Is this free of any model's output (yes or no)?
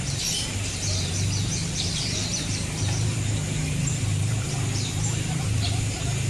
no